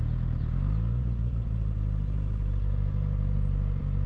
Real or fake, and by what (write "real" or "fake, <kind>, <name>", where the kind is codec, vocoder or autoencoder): fake, vocoder, BigVGAN v2